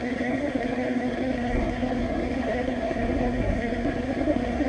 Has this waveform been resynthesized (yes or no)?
yes